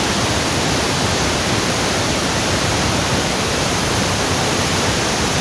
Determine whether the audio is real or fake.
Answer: fake